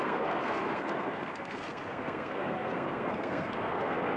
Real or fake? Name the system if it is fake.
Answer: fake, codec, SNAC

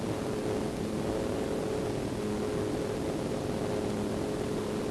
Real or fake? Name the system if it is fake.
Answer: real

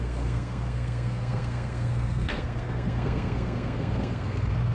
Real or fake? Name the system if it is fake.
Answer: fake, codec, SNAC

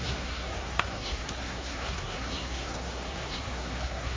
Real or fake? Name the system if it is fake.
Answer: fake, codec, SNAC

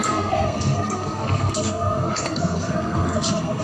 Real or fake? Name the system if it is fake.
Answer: fake, codec, SNAC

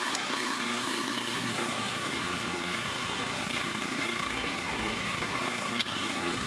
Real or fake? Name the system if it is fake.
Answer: fake, codec, SNAC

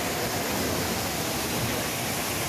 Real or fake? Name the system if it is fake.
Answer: real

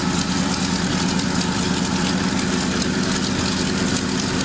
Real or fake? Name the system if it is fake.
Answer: real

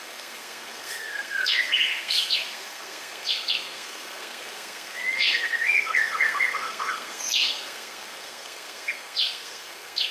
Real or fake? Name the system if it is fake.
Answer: fake, codec, SNAC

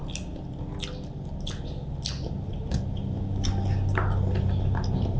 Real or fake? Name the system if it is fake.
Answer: real